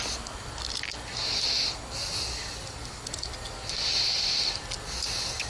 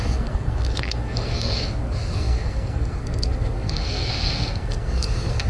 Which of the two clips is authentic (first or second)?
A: first